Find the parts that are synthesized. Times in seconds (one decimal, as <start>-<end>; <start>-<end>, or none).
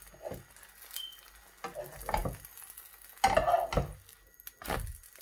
none